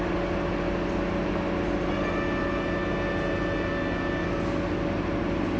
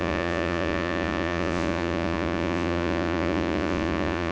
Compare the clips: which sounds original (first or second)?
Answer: first